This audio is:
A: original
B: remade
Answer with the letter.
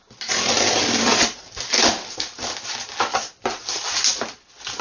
A